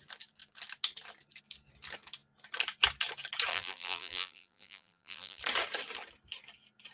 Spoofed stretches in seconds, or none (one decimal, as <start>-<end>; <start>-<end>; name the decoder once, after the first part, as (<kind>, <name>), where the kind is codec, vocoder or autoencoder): 3.5-5.4 (vocoder, BigVGAN v2)